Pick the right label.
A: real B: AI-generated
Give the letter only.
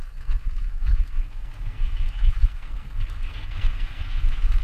B